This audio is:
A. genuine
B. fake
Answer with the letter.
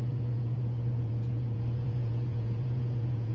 B